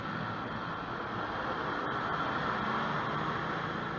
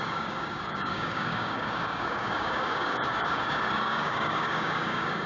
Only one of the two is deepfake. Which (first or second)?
second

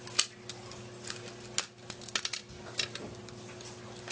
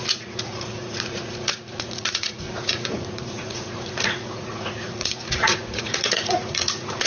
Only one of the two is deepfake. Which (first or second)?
second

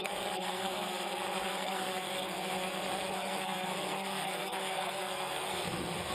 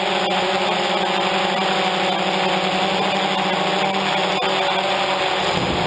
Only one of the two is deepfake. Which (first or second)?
first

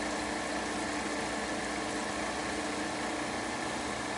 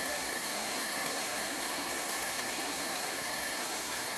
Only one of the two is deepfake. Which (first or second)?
second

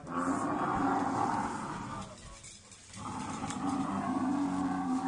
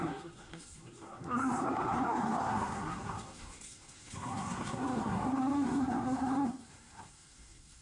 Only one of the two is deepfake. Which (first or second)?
second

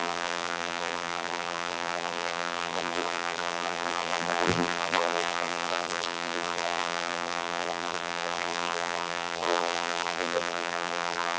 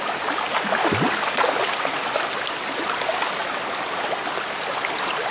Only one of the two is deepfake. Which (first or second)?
first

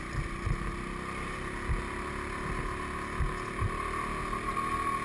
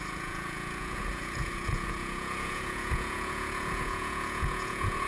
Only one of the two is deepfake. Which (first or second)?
second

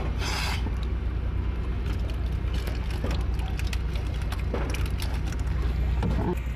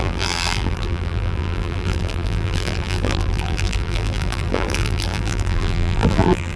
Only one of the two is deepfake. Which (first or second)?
second